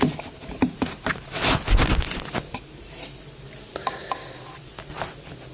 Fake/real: real